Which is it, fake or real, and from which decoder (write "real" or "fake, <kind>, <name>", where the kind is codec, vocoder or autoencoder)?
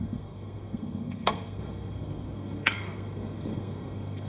fake, codec, SNAC